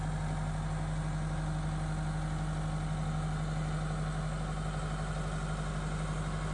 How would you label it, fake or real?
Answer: real